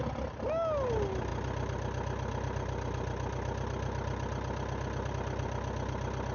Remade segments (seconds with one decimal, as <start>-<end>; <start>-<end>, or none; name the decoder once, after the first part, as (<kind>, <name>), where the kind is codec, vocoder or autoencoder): none